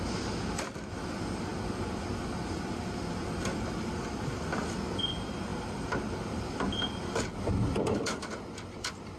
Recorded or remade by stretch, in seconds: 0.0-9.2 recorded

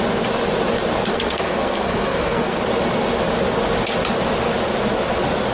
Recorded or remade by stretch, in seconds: 0.0-1.1 recorded; 1.1-2.6 remade; 2.6-5.5 recorded